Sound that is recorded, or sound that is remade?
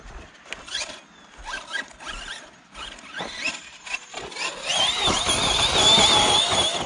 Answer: recorded